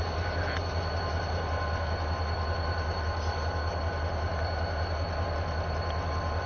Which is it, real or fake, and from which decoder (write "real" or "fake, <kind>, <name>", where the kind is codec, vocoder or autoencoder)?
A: real